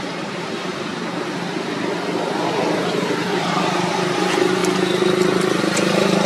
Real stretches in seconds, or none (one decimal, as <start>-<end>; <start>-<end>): 0.9-3.5; 4.6-5.6